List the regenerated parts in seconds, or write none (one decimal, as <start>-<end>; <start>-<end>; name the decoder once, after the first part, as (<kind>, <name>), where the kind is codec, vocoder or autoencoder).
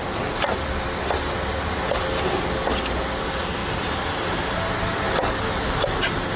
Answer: none